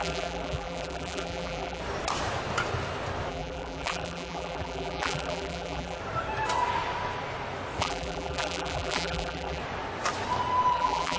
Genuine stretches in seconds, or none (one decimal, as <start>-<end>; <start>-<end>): 1.8-3.3; 6.0-7.8; 9.6-10.7